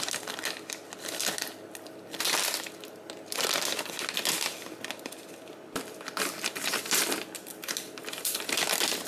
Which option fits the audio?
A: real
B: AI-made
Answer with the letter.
A